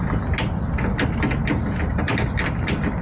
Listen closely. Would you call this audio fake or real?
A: real